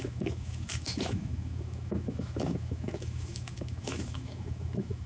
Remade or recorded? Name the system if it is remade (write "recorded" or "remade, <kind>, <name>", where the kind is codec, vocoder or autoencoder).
remade, autoencoder, DAC-VAE